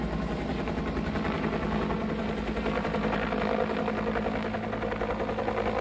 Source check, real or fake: real